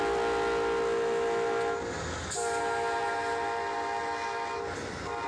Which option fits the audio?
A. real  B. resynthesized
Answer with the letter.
A